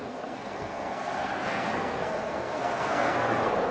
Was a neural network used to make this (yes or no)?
yes